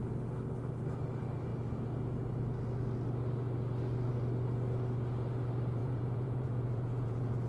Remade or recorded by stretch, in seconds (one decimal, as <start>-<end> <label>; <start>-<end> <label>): 0.0-5.8 recorded; 5.8-7.5 remade

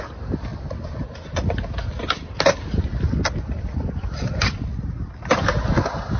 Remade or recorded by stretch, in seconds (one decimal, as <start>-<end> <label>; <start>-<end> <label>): 0.0-0.5 recorded; 0.5-1.3 remade; 1.3-6.2 recorded

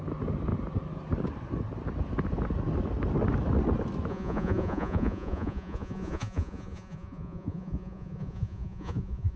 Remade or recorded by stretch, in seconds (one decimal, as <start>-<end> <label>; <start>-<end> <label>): 0.0-4.1 recorded; 4.1-9.4 remade

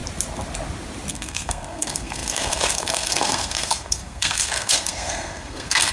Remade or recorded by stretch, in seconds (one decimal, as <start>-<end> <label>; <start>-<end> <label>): 0.0-1.1 recorded; 1.1-5.9 remade

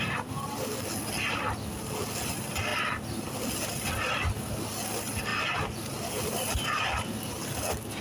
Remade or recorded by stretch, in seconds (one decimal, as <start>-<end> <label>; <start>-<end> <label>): 0.0-8.0 recorded

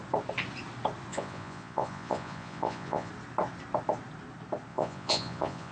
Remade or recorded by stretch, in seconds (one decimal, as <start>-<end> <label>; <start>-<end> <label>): 0.0-1.1 recorded; 1.1-3.1 remade; 3.1-4.7 recorded; 4.7-5.7 remade